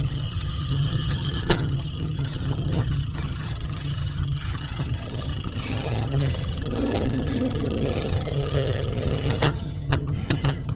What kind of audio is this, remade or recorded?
remade